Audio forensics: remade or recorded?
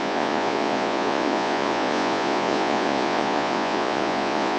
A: remade